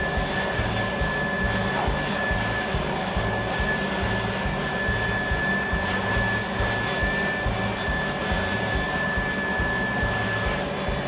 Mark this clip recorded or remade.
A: recorded